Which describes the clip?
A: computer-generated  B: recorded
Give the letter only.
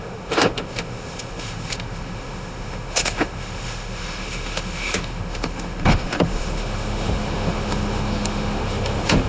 A